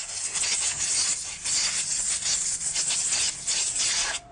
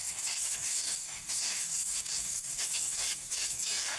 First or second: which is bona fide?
first